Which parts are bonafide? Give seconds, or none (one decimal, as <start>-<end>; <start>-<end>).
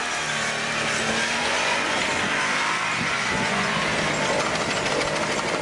0.0-1.4; 2.0-2.9; 3.8-5.6